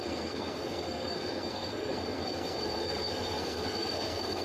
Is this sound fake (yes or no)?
yes